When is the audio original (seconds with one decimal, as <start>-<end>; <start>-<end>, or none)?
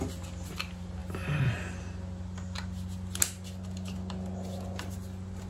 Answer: 0.0-5.5